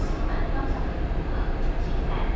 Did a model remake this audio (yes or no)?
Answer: no